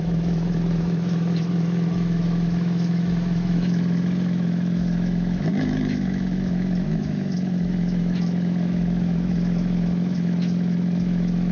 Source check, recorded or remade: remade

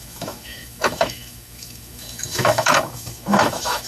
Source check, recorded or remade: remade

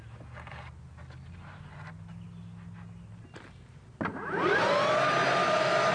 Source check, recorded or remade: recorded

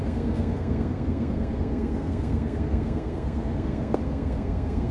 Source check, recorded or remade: remade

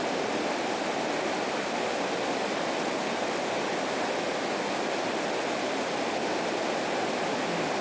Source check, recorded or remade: recorded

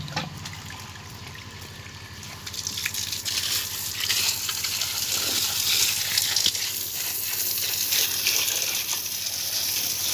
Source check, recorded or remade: recorded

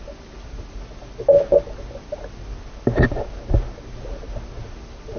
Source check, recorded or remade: recorded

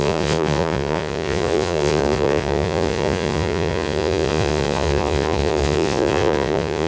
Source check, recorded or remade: remade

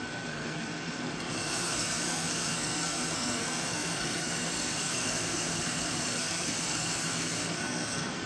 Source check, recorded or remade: remade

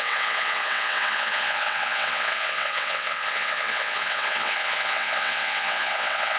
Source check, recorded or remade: remade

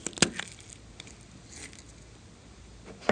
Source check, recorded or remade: recorded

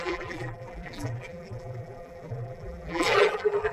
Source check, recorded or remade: remade